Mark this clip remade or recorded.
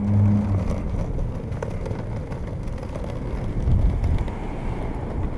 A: recorded